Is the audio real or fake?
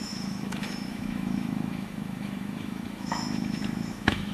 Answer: fake